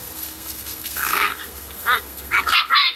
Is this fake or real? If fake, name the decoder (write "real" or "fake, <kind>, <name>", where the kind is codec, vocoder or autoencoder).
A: fake, codec, SNAC